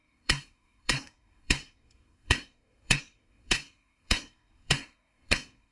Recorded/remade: remade